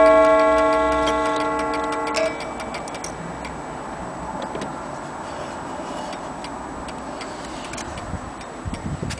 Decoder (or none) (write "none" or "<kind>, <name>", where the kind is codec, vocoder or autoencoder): none